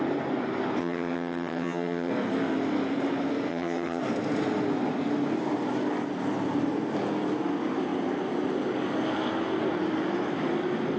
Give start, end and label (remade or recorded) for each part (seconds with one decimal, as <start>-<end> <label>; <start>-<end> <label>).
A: 0.0-0.8 recorded; 0.8-2.1 remade; 2.1-3.5 recorded; 3.5-4.0 remade; 4.0-11.0 recorded